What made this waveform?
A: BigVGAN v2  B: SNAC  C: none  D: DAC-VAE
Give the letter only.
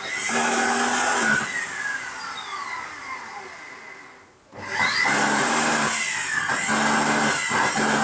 C